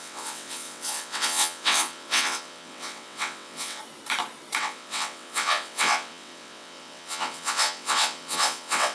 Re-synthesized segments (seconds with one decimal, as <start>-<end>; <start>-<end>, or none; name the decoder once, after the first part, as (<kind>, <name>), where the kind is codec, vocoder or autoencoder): 0.0-3.8 (vocoder, WaveNeXt); 4.6-8.9